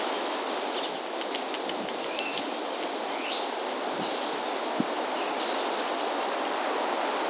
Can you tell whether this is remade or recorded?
recorded